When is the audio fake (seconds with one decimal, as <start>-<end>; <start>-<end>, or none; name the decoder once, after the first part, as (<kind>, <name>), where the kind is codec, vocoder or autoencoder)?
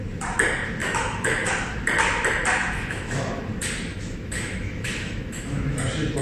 0.8-1.5 (autoencoder, DAC-VAE); 2.6-3.4; 3.9-5.8